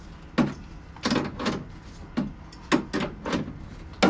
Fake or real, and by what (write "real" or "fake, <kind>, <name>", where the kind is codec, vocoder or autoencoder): real